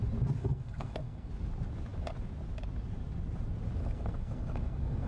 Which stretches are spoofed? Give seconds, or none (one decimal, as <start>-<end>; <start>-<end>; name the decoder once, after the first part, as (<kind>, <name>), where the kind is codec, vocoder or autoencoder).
0.4-1.3 (codec, SNAC); 3.8-5.1